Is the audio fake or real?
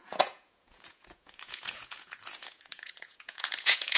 fake